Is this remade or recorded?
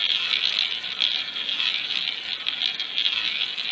recorded